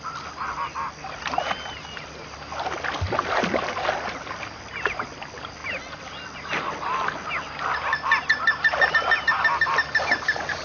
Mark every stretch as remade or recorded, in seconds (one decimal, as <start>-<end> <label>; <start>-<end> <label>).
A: 0.0-10.6 recorded